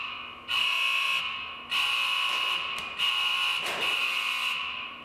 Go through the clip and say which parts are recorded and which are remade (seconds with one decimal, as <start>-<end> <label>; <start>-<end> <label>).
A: 0.0-0.6 recorded; 0.6-1.2 remade; 1.2-5.0 recorded